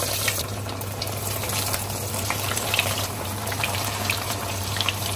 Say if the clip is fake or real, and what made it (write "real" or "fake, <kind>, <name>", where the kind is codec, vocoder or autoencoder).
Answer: fake, vocoder, BigVGAN v2